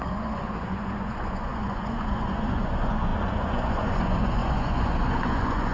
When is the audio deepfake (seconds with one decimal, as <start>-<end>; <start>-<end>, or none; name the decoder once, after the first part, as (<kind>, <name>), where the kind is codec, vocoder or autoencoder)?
0.0-5.7 (vocoder, Vocos)